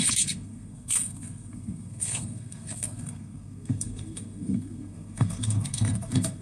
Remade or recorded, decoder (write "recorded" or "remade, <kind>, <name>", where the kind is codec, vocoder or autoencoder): remade, codec, SNAC